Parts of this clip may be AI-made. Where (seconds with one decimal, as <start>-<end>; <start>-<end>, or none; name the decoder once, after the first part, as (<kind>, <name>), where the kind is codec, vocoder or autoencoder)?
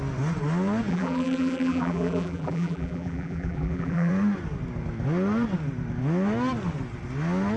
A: 0.9-4.1 (vocoder, BigVGAN v2)